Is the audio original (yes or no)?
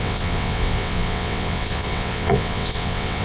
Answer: no